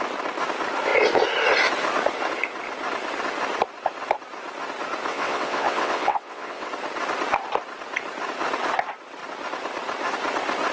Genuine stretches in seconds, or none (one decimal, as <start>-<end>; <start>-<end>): 0.0-5.1; 6.7-10.7